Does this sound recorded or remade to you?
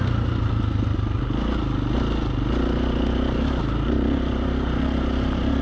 recorded